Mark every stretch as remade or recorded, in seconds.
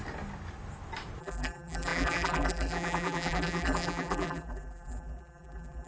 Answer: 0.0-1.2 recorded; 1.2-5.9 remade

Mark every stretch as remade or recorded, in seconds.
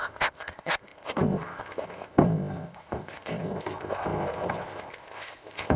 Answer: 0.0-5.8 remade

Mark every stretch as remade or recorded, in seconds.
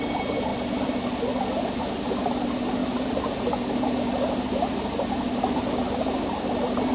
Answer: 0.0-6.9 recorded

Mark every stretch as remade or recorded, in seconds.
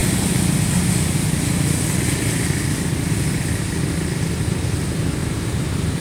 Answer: 0.0-5.2 recorded; 5.2-6.0 remade